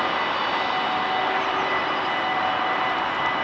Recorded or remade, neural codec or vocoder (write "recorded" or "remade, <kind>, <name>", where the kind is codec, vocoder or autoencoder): recorded